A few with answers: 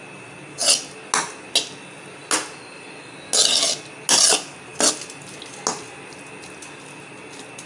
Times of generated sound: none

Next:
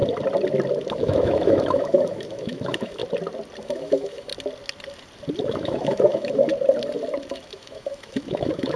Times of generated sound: 0.9-3.0; 3.6-4.3; 5.4-6.5; 7.3-8.8

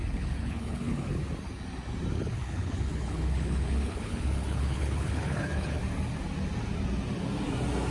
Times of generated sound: 0.0-1.2; 2.1-5.8